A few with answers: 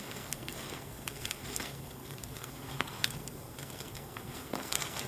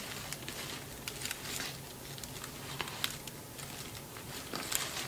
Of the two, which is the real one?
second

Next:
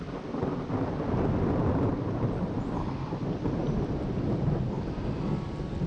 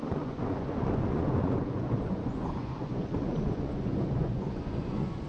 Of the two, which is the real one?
first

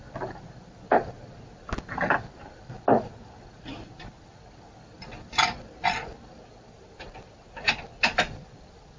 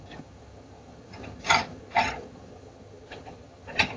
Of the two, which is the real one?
first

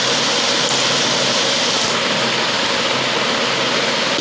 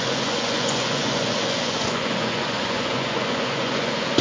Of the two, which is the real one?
first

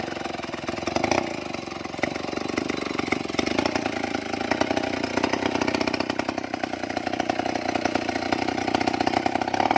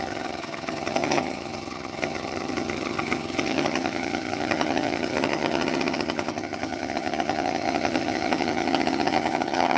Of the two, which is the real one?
first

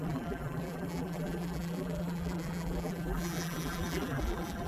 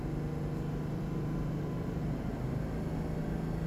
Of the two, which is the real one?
second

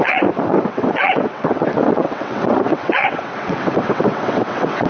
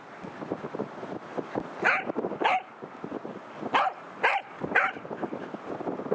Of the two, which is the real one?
second